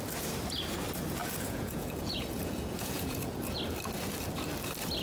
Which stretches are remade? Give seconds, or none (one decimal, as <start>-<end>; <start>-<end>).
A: 1.2-3.6